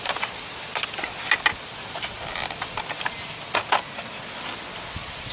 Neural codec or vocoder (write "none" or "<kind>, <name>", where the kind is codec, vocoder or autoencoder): none